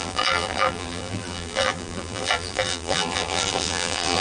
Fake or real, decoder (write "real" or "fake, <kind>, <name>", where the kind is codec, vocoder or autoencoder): fake, vocoder, BigVGAN v2